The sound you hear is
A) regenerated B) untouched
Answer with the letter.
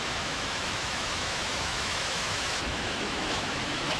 A